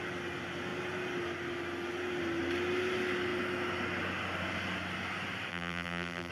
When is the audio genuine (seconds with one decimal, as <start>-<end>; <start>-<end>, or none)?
0.0-5.5